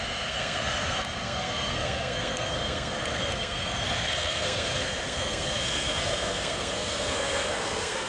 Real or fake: fake